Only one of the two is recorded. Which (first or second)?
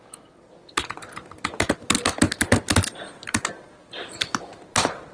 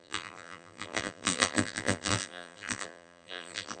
first